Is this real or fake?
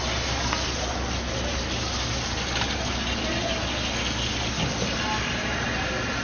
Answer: real